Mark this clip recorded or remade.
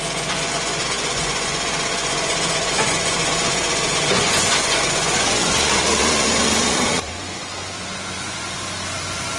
remade